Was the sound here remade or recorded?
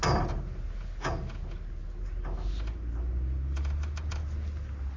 recorded